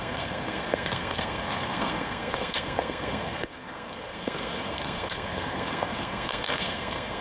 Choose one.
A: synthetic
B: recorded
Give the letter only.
A